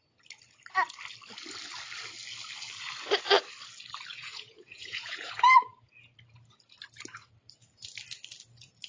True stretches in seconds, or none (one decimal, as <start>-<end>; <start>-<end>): 0.0-4.1; 5.9-8.9